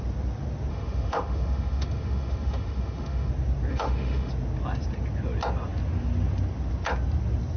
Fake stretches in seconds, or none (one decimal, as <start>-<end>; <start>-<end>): 0.7-3.3; 3.7-4.3